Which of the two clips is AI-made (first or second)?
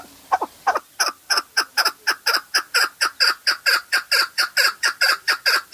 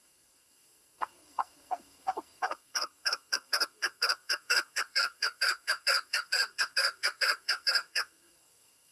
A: second